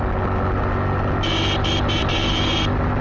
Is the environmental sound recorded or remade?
recorded